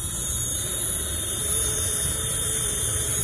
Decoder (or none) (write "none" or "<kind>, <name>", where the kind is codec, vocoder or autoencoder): vocoder, BigVGAN v2